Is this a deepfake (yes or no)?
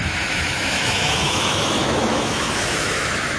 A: yes